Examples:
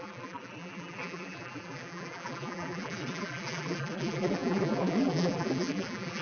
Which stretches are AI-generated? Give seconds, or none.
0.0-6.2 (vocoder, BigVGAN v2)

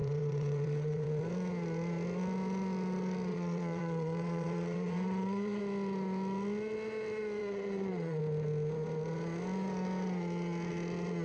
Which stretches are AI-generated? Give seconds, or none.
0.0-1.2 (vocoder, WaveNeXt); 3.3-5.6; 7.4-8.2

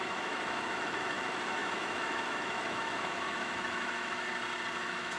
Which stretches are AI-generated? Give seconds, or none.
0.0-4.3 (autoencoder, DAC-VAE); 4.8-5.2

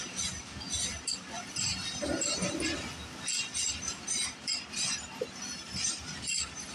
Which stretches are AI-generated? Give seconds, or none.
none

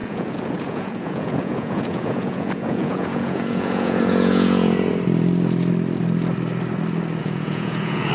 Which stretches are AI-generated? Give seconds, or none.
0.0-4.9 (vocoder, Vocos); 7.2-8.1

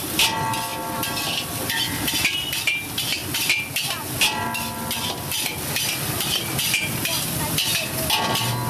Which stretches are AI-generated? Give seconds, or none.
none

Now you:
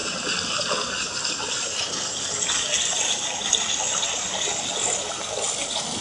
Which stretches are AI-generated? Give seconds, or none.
none